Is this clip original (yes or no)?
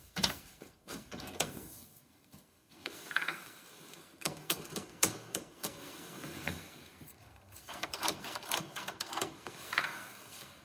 no